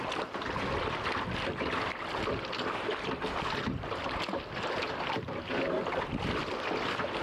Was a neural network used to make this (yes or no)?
no